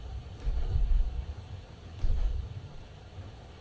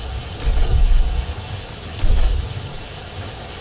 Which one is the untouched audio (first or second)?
second